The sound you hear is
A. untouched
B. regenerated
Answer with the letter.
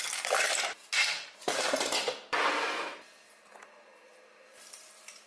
A